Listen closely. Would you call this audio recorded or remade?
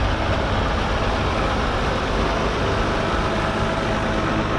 recorded